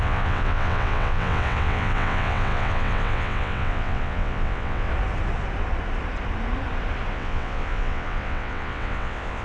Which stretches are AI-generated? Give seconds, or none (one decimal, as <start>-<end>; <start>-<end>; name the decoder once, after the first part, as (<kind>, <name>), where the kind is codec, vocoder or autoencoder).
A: 0.0-4.9 (vocoder, WaveNeXt); 7.1-9.4